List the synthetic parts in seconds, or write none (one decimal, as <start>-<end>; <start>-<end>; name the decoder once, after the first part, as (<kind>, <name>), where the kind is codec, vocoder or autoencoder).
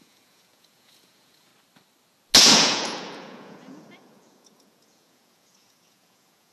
0.0-1.5 (vocoder, Vocos); 2.4-6.5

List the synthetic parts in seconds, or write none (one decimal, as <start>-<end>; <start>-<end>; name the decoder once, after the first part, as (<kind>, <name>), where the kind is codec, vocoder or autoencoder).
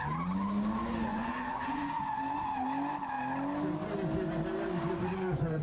1.1-2.2 (vocoder, Vocos); 5.0-5.6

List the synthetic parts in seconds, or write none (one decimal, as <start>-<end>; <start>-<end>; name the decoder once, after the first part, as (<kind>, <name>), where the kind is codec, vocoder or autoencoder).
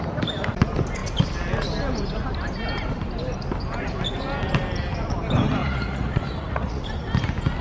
5.6-6.8 (vocoder, Vocos)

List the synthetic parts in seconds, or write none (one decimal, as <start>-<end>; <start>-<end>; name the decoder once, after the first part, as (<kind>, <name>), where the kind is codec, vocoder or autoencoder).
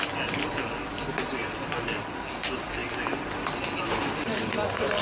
none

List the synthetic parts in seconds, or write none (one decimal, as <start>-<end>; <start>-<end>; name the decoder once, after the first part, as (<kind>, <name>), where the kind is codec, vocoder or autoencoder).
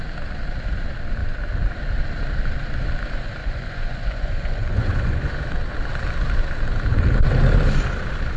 3.4-5.3 (vocoder, Vocos)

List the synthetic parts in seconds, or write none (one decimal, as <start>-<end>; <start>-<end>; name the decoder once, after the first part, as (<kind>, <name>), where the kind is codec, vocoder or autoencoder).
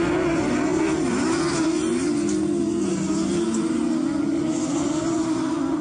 none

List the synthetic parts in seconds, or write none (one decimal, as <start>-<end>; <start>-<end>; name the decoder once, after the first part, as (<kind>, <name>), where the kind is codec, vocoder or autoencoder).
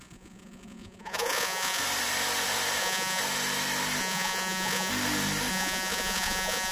0.0-1.8 (vocoder, Vocos); 2.8-3.2; 4.0-4.9; 5.5-6.7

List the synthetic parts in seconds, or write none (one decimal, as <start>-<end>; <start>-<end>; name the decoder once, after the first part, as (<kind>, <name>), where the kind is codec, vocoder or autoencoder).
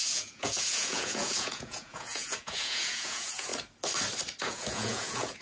0.0-3.5 (vocoder, Vocos); 4.4-5.4